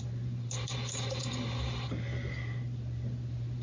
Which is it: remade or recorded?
recorded